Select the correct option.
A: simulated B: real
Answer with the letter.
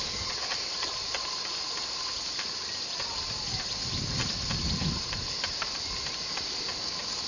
B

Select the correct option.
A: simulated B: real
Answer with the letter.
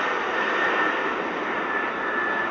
B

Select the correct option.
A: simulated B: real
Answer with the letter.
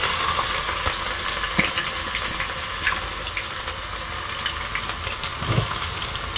B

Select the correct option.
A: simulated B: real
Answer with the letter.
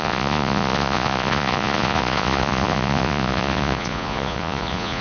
A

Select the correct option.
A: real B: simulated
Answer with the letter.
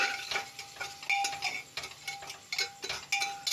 A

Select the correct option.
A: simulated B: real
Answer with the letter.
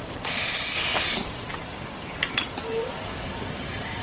B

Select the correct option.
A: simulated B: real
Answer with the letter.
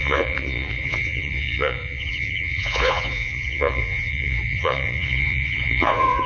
A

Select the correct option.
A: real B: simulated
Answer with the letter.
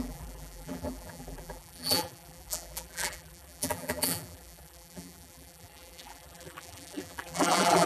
B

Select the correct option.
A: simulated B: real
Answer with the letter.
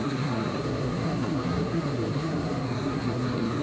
A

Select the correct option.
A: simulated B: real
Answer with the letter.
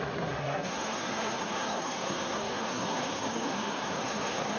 A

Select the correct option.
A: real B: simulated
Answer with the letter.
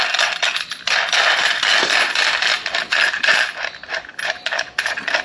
A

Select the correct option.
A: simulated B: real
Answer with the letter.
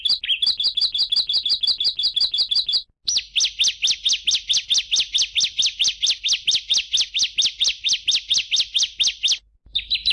B